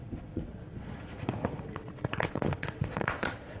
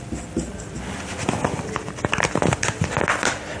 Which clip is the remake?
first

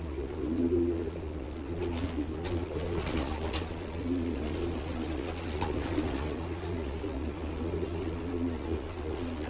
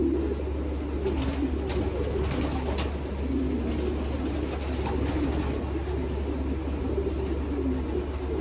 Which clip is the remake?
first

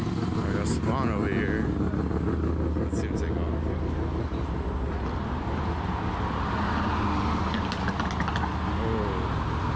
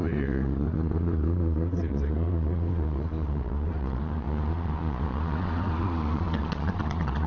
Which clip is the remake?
second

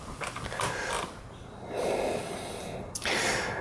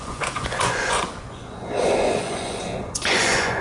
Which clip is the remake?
second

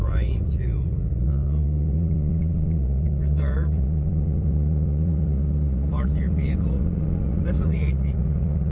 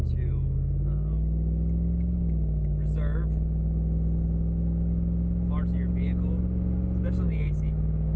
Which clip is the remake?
first